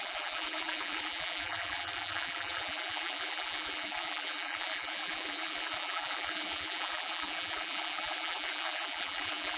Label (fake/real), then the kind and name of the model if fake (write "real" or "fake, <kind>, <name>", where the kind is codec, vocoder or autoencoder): fake, vocoder, BigVGAN v2